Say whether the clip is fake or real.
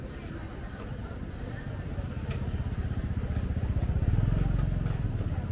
fake